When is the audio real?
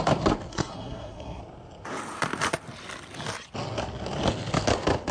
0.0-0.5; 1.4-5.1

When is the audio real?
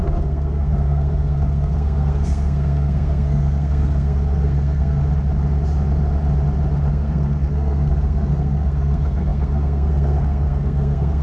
5.0-6.9